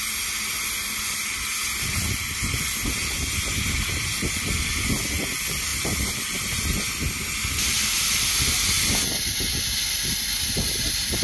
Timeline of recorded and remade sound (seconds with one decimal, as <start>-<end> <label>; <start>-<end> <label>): 0.0-5.7 recorded; 5.7-6.9 remade; 6.9-11.2 recorded